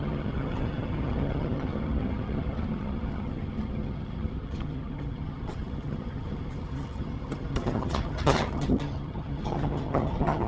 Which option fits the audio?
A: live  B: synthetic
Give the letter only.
B